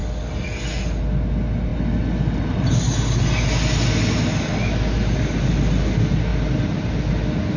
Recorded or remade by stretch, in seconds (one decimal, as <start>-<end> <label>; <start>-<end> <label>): 0.0-6.3 recorded; 6.3-7.1 remade; 7.1-7.6 recorded